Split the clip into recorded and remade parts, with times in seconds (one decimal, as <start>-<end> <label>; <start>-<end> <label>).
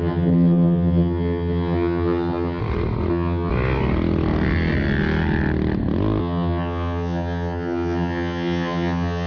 0.0-2.6 remade; 2.6-3.1 recorded; 3.1-3.5 remade; 3.5-6.2 recorded; 6.2-9.3 remade